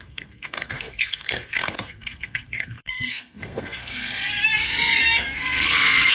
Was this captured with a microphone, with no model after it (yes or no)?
no